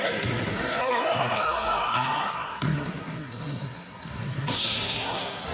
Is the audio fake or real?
fake